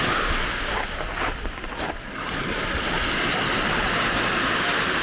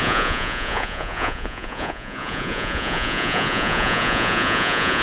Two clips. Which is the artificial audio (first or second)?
second